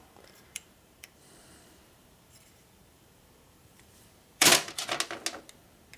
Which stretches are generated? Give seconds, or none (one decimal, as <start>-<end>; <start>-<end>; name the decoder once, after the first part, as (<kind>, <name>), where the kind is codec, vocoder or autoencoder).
0.0-4.8 (vocoder, BigVGAN v2)